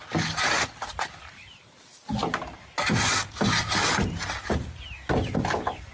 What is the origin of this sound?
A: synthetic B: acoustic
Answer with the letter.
B